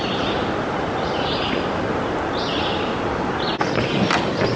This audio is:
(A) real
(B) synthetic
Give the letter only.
A